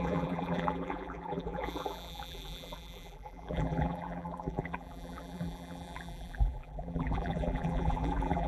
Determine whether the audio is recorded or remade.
remade